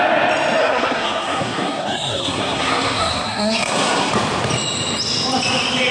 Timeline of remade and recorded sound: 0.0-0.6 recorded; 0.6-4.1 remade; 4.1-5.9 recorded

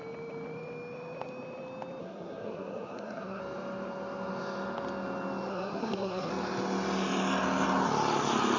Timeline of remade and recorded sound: 0.0-2.0 recorded; 2.0-3.4 remade; 3.4-5.5 recorded; 5.5-6.3 remade; 6.3-8.6 recorded

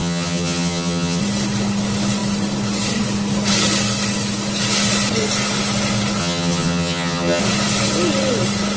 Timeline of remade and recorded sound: 0.0-1.2 remade; 1.2-6.2 recorded; 6.2-7.4 remade; 7.4-8.8 recorded

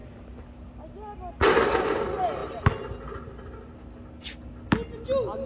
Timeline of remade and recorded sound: 0.0-5.5 recorded

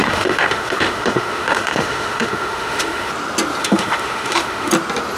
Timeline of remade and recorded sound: 0.0-3.1 remade; 3.1-3.6 recorded; 3.6-4.7 remade; 4.7-5.2 recorded